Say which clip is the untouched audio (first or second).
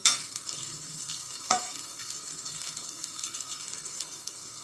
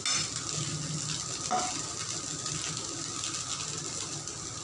second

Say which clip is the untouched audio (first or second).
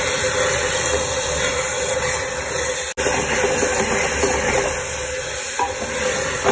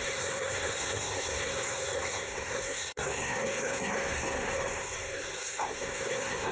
first